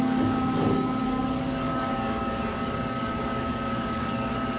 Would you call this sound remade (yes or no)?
yes